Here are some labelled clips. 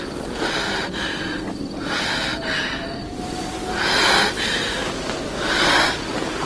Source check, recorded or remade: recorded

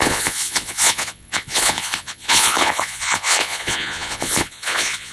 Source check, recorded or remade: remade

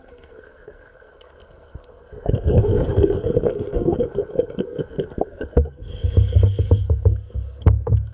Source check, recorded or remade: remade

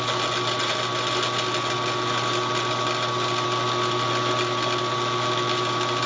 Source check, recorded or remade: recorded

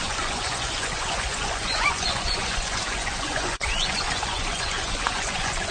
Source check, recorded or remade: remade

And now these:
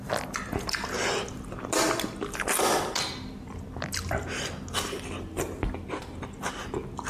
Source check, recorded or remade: recorded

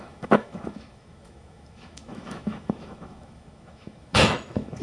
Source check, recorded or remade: remade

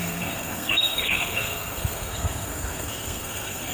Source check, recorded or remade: remade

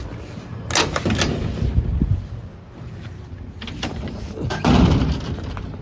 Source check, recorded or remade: recorded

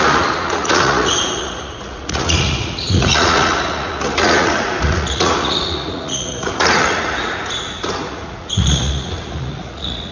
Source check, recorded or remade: remade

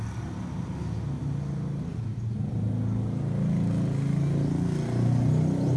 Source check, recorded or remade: recorded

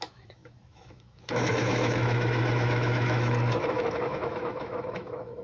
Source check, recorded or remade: remade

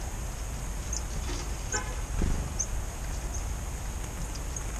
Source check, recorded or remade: recorded